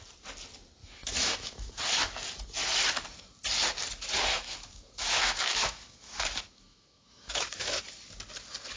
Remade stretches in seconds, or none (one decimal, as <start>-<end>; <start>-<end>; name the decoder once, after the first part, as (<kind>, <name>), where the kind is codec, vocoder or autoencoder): 0.8-1.7 (autoencoder, DAC-VAE); 4.3-7.8